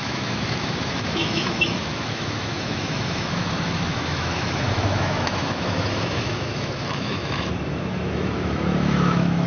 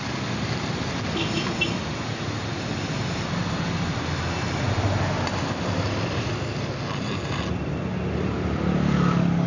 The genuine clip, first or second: second